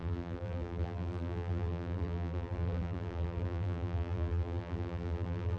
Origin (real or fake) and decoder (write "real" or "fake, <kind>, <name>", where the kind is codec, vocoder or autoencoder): fake, vocoder, BigVGAN v2